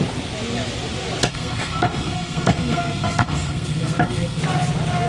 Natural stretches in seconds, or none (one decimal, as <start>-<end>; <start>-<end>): 0.0-1.3; 4.4-5.1